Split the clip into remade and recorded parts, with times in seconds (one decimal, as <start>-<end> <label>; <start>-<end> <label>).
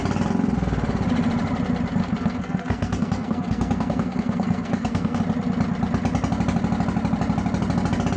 0.0-2.0 recorded; 2.0-5.2 remade; 5.2-8.2 recorded